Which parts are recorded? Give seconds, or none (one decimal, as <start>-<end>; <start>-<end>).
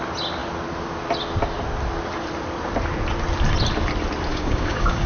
0.0-4.3